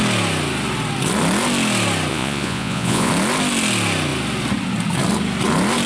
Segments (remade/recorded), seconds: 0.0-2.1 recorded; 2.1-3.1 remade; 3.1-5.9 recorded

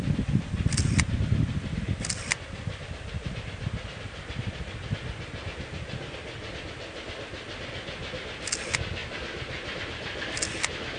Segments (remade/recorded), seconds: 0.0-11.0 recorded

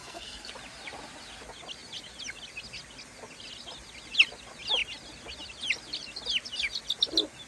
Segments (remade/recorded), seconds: 0.0-0.5 remade; 0.5-7.5 recorded

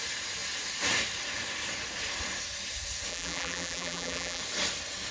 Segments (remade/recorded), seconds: 0.0-3.1 recorded; 3.1-4.4 remade; 4.4-5.1 recorded

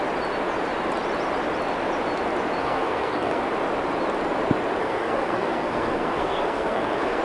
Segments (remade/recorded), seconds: 0.0-2.6 recorded; 2.6-3.4 remade; 3.4-4.8 recorded; 4.8-7.2 remade

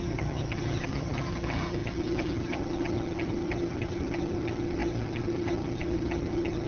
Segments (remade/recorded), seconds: 0.0-6.7 remade

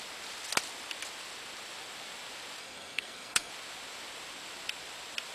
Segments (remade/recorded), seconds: 0.0-2.6 recorded; 2.6-3.5 remade; 3.5-5.3 recorded

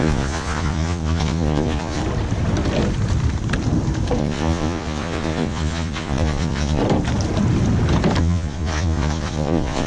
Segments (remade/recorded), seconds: 0.0-2.0 remade; 2.0-4.2 recorded; 4.2-6.8 remade; 6.8-8.2 recorded; 8.2-9.9 remade